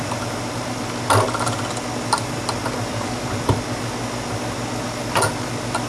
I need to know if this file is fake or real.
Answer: real